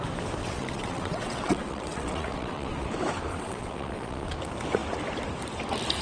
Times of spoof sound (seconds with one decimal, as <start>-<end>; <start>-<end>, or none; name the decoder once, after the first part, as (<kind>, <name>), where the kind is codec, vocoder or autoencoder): 0.4-2.9 (vocoder, WaveNeXt); 3.3-4.3